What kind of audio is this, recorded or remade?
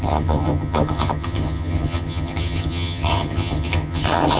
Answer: remade